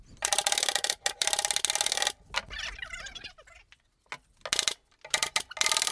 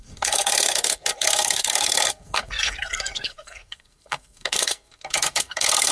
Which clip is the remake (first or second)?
second